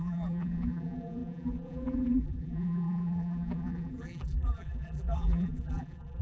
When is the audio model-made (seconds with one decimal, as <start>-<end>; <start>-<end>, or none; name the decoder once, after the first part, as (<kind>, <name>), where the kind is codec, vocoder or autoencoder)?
0.0-6.2 (vocoder, BigVGAN v2)

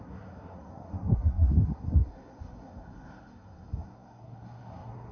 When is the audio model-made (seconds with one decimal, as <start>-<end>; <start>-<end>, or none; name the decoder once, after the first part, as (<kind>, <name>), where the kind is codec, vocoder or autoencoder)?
0.0-5.1 (codec, SNAC)

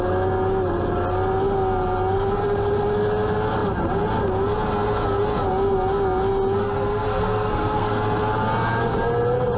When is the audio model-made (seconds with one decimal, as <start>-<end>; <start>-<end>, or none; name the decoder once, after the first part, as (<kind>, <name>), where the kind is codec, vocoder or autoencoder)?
6.6-7.9 (codec, SNAC)